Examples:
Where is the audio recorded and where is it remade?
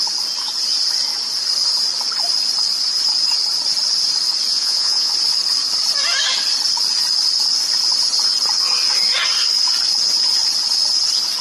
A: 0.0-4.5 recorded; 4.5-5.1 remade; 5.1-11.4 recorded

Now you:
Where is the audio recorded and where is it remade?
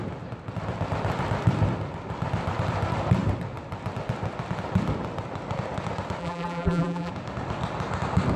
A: 0.0-6.2 recorded; 6.2-7.1 remade; 7.1-8.4 recorded